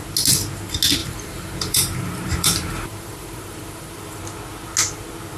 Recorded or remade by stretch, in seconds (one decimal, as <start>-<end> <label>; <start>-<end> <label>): 0.0-1.0 recorded; 1.0-4.2 remade; 4.2-5.4 recorded